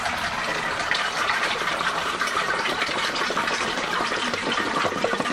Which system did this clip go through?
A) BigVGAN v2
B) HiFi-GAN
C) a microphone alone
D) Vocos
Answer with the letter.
A